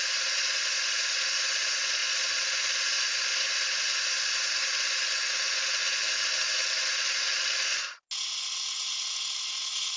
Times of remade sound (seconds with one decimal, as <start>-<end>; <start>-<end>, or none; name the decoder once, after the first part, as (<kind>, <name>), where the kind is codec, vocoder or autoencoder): none